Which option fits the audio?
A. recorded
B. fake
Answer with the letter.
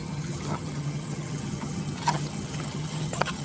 B